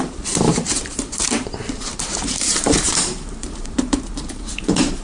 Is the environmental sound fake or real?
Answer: fake